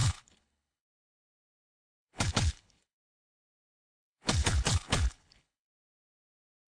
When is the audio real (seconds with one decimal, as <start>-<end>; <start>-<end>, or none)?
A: none